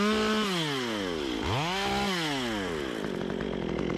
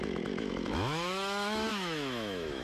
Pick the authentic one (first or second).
first